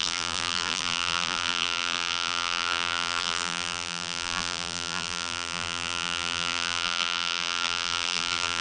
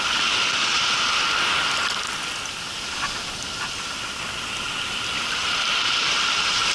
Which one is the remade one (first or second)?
first